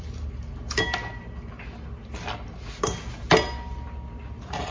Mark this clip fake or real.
real